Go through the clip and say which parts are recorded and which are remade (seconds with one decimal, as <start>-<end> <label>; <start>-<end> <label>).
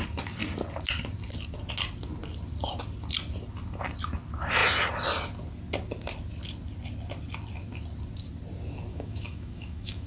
0.0-8.9 recorded; 8.9-10.1 remade